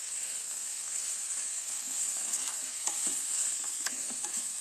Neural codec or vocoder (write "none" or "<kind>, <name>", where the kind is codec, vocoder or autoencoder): codec, SNAC